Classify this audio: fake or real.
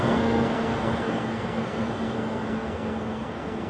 fake